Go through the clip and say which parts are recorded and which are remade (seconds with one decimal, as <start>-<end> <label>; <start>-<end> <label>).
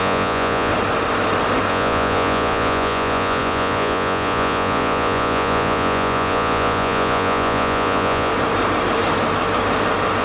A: 0.0-0.7 remade; 0.7-1.7 recorded; 1.7-8.3 remade; 8.3-10.2 recorded